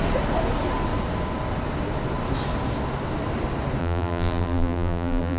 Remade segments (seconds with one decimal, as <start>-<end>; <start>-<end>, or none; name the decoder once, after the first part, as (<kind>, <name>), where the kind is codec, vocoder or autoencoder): 3.8-5.4 (vocoder, BigVGAN v2)